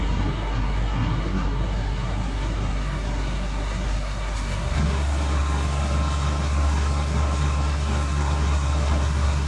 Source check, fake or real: fake